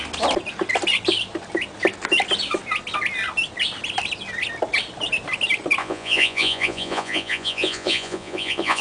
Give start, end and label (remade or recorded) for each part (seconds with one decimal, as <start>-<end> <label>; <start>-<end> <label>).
0.0-5.8 recorded; 5.8-8.8 remade